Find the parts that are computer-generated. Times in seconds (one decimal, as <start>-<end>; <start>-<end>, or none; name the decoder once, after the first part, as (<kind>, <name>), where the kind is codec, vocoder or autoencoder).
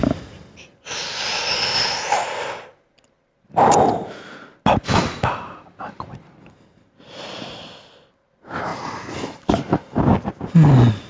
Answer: none